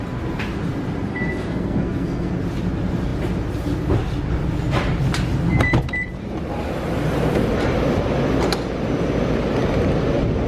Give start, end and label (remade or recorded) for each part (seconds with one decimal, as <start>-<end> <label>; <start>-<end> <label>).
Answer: 0.0-1.1 recorded; 1.1-2.3 remade; 2.3-10.5 recorded